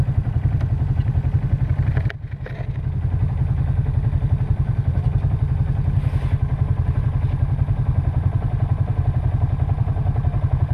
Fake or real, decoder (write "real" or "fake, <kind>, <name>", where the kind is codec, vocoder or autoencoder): real